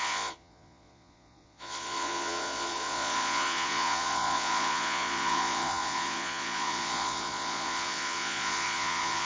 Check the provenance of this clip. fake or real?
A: fake